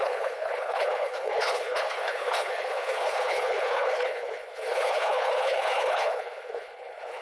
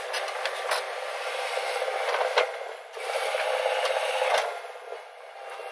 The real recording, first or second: second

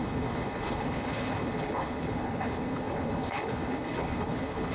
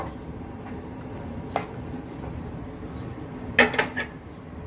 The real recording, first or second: second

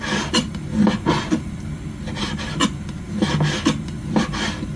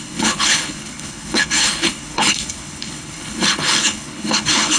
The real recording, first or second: first